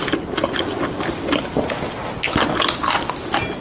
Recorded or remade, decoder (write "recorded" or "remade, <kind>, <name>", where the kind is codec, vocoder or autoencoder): recorded